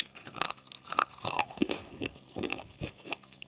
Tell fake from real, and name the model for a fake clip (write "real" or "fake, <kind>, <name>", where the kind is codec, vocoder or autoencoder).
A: fake, codec, SNAC